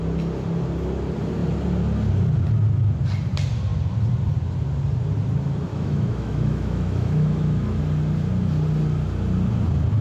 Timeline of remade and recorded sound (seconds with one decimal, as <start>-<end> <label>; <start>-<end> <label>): 0.0-5.7 recorded; 5.7-7.8 remade; 7.8-10.0 recorded